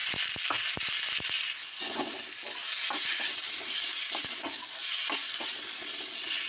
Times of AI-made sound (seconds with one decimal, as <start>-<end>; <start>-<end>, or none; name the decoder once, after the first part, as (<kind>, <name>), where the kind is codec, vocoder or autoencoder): 1.6-2.2 (vocoder, Vocos)